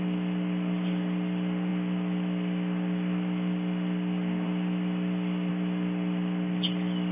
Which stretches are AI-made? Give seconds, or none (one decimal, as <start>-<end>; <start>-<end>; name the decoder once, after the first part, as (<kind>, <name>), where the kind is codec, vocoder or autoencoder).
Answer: none